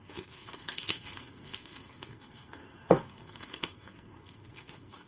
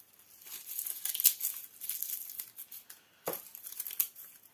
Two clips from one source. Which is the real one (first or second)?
second